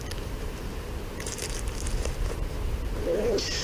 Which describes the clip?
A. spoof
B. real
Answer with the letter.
A